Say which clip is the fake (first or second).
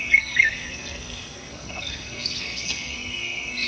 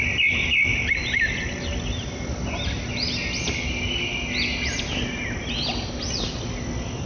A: first